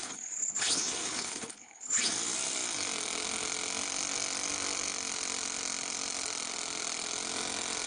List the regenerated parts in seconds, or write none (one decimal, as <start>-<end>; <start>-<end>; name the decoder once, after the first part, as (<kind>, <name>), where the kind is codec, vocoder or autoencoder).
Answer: 0.0-2.1 (codec, HILCodec)